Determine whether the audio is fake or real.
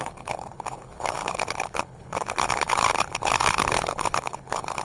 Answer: fake